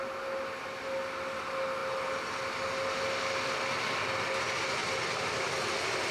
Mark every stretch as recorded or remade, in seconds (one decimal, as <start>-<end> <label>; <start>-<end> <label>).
0.0-4.8 recorded; 4.8-5.5 remade; 5.5-6.1 recorded